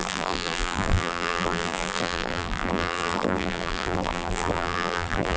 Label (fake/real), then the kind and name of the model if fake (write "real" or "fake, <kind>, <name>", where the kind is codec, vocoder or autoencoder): fake, vocoder, BigVGAN v2